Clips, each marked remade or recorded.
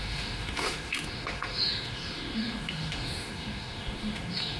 remade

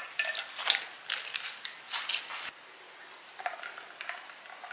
recorded